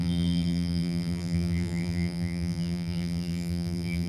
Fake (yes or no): yes